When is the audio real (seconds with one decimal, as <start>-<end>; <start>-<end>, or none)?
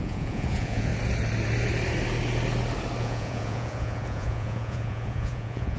0.9-3.0